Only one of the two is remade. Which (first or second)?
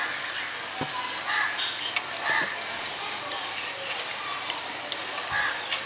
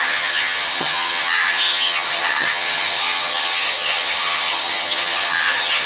second